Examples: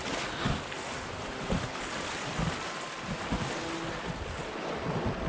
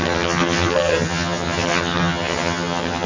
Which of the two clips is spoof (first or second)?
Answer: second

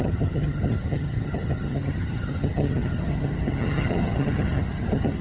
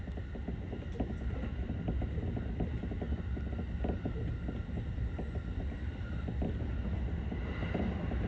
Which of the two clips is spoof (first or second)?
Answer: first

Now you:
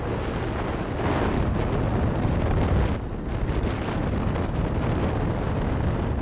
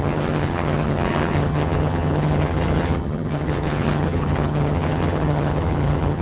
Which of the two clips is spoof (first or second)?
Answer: second